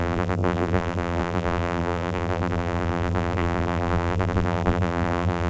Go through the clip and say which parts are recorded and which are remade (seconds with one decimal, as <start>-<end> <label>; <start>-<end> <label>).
0.0-5.5 remade